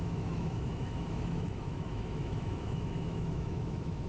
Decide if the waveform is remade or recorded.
remade